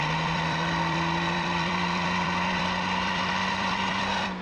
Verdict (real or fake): fake